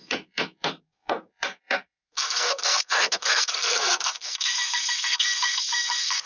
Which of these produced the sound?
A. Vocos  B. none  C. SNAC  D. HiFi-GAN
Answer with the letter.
C